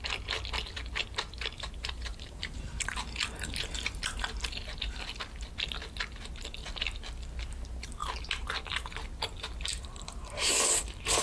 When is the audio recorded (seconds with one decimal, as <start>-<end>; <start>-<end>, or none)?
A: 0.0-1.0; 2.9-9.7; 10.5-11.2